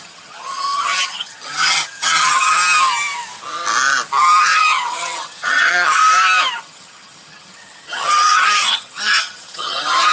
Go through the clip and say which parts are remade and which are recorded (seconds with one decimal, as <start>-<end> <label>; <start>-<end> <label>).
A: 0.0-2.6 remade; 2.6-4.4 recorded; 4.4-6.0 remade; 6.0-6.6 recorded; 6.6-10.1 remade